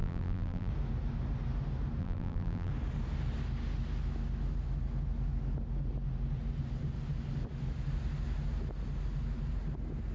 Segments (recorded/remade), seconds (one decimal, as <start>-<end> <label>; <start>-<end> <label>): 0.0-0.7 remade; 0.7-2.0 recorded; 2.0-2.7 remade; 2.7-10.1 recorded